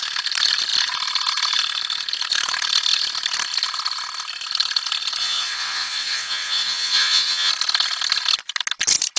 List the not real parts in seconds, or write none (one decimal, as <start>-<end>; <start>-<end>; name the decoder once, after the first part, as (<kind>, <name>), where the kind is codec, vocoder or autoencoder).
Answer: 5.2-7.5 (vocoder, WaveNeXt)